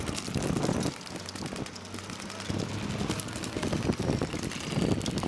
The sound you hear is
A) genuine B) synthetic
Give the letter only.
A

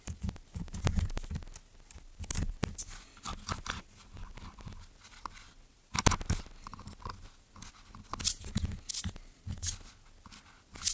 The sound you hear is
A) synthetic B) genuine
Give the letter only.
B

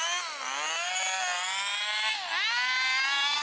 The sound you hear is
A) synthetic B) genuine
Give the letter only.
B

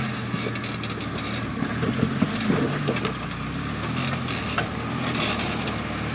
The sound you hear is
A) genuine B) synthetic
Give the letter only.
A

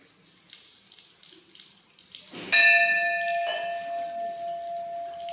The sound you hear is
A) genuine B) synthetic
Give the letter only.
A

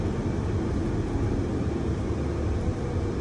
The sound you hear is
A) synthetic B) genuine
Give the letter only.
B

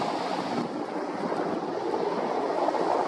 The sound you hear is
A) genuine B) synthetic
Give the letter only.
A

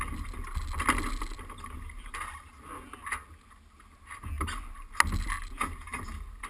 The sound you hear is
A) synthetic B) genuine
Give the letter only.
B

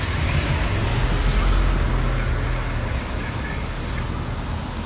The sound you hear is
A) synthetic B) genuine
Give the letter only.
B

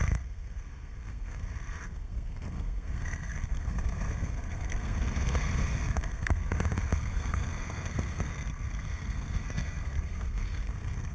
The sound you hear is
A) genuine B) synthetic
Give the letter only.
B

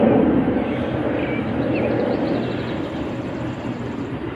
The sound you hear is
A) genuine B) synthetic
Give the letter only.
A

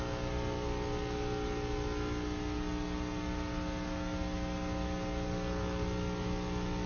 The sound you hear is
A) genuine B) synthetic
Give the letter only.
A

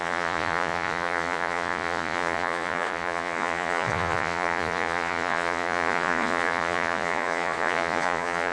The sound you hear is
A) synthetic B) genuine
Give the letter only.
A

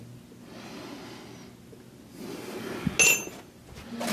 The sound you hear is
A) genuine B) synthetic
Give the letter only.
A